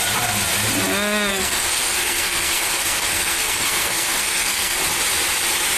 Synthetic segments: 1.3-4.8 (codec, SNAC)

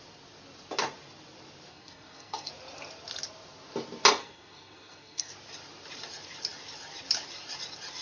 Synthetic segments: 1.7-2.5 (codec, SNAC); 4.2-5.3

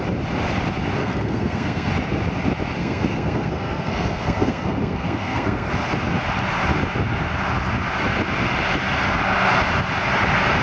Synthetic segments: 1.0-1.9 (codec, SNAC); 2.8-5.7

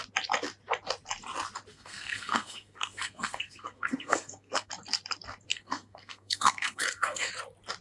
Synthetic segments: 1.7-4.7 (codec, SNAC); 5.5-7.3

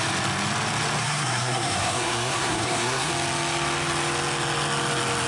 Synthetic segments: 1.0-3.1 (codec, SNAC)

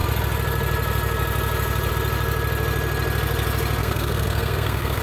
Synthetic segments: 3.8-5.0 (codec, SNAC)